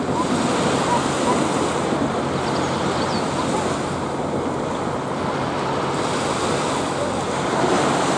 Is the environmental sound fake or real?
real